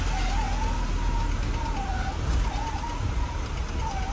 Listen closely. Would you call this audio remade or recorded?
recorded